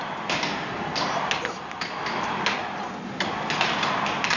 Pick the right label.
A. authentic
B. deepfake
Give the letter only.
A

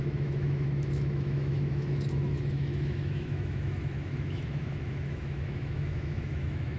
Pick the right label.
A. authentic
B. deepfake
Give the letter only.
B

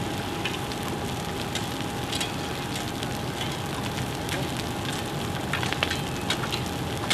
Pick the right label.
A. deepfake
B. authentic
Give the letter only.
B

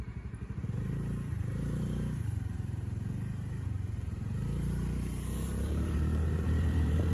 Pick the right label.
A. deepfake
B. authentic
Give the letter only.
A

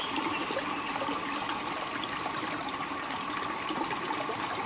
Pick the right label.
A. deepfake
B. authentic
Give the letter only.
B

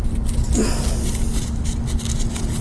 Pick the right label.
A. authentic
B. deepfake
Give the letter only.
A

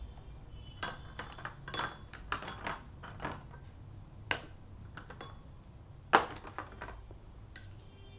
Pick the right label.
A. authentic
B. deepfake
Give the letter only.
A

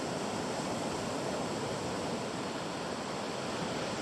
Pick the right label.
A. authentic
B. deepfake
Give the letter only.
A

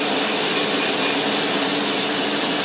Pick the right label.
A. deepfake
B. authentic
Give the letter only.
B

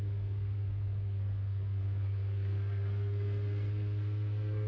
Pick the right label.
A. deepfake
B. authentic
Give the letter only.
A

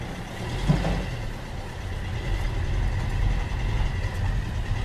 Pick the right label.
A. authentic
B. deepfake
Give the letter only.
A